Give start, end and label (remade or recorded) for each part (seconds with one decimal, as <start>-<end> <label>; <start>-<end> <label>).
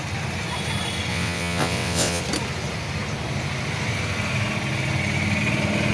0.0-1.1 recorded; 1.1-2.2 remade; 2.2-5.9 recorded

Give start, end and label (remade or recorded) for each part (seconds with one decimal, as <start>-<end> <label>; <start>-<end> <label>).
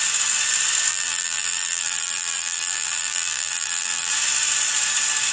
0.0-0.9 recorded; 0.9-4.1 remade; 4.1-5.3 recorded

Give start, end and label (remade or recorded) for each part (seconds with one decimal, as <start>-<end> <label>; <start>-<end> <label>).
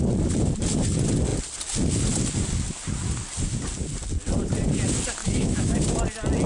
0.0-5.2 recorded; 5.2-5.8 remade; 5.8-6.5 recorded